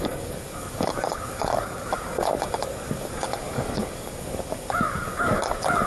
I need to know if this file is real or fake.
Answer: fake